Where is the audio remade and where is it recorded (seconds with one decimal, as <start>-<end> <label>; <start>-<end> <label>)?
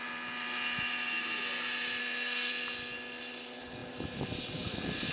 0.0-2.0 recorded; 2.0-2.5 remade; 2.5-5.1 recorded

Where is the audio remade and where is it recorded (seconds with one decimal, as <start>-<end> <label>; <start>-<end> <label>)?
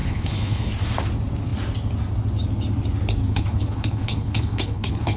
0.0-0.7 remade; 0.7-3.2 recorded; 3.2-5.2 remade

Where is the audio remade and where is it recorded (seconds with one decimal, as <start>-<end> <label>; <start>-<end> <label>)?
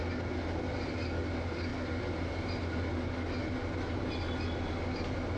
0.0-5.4 recorded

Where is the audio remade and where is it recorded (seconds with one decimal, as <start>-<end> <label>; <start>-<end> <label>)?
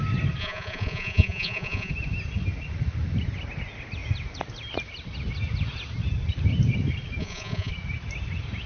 0.0-0.4 recorded; 0.4-1.9 remade; 1.9-7.2 recorded; 7.2-7.7 remade; 7.7-8.7 recorded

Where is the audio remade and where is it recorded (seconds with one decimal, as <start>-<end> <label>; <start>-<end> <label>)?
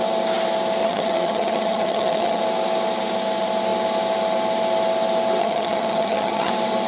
0.0-0.8 recorded; 0.8-2.4 remade; 2.4-5.4 recorded; 5.4-6.5 remade; 6.5-6.9 recorded